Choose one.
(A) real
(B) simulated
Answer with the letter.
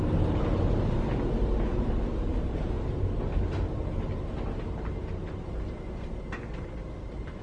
A